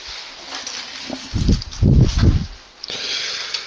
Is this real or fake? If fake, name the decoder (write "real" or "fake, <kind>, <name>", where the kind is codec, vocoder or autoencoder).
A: real